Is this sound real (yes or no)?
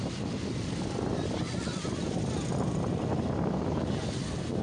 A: yes